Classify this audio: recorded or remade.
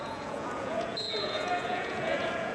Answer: remade